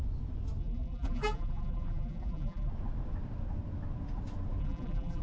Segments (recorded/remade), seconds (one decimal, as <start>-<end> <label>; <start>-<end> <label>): 0.0-0.6 recorded; 0.6-2.7 remade; 2.7-4.6 recorded; 4.6-5.2 remade